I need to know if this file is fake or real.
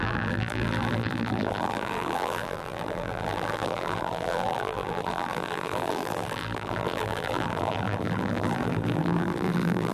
fake